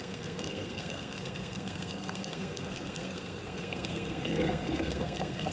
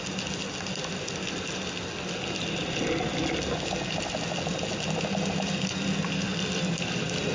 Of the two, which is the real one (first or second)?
second